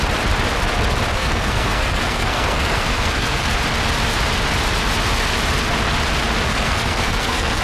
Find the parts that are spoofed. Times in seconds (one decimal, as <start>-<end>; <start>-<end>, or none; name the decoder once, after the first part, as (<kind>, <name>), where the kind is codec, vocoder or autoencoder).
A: 1.1-3.5 (codec, SNAC); 6.5-7.6

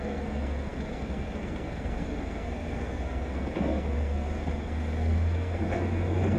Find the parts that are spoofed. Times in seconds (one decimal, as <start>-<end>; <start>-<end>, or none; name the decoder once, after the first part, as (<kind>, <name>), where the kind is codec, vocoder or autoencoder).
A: 0.0-6.4 (codec, SNAC)